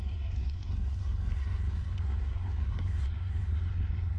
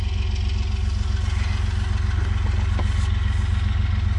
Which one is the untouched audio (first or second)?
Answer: second